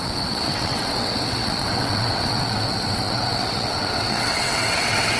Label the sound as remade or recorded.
remade